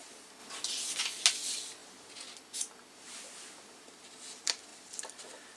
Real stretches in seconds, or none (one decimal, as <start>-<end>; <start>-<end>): 0.0-5.6

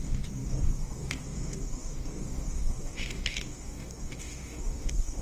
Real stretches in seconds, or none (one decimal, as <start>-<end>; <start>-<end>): none

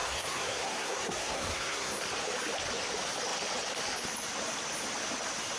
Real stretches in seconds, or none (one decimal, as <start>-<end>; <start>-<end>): 2.0-5.6

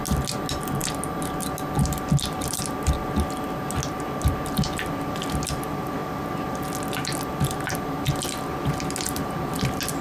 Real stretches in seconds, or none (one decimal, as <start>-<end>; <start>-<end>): 0.0-10.0

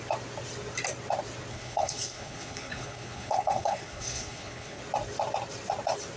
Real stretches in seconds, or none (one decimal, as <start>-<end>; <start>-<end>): 0.0-1.5; 4.8-6.2

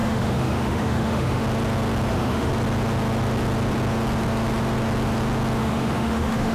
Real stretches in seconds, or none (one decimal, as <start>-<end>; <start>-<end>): 1.4-2.1; 2.5-5.6